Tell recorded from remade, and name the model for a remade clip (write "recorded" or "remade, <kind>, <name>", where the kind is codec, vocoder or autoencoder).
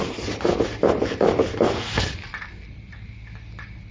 recorded